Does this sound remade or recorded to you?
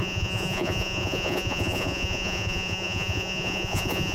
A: remade